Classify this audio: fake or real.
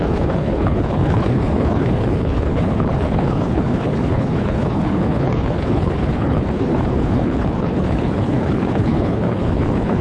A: fake